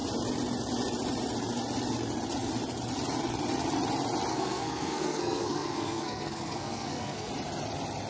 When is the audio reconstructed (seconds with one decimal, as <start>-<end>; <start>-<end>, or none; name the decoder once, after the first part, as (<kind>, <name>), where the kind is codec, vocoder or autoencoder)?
4.3-7.3 (codec, SNAC)